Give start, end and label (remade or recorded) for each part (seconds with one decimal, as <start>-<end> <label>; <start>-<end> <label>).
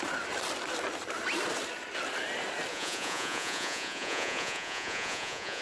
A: 0.0-2.7 recorded; 2.7-5.6 remade